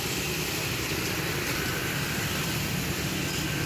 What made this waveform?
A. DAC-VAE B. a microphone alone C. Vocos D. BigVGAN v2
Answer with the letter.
D